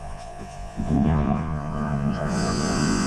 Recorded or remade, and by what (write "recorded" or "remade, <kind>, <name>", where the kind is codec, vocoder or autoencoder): remade, vocoder, Vocos